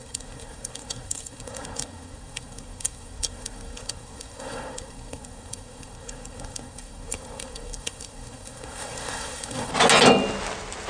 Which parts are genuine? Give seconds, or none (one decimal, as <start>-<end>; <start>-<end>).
9.7-10.9